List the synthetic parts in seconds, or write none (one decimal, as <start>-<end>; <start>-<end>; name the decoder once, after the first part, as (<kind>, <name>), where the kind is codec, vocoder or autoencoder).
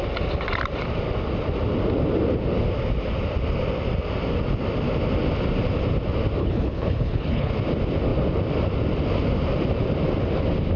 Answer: 6.4-7.5 (codec, HILCodec)